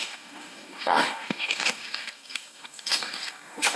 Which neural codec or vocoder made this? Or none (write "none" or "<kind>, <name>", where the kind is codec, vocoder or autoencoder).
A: codec, DAC